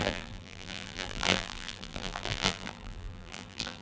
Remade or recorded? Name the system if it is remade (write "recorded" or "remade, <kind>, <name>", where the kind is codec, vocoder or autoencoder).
remade, vocoder, BigVGAN v2